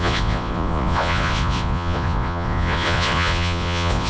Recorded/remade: remade